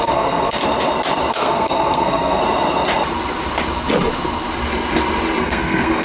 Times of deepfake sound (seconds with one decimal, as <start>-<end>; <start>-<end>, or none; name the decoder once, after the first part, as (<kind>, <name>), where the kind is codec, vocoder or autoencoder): 0.0-0.6 (codec, SNAC); 1.3-2.4; 5.4-6.0